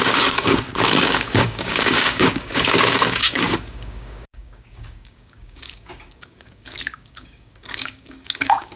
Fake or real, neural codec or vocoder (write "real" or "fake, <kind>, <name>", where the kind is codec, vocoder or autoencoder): fake, codec, DAC